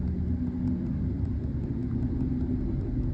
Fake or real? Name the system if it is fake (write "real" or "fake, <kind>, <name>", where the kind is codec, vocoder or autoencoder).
real